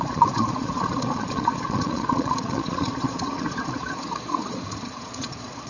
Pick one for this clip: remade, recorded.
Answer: remade